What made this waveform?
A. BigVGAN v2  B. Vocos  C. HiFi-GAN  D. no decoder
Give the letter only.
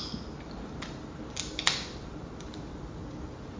D